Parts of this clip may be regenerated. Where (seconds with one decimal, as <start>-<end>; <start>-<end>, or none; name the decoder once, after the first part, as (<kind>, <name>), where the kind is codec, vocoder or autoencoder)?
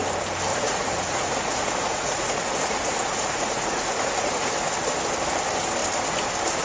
0.5-4.5 (vocoder, Vocos)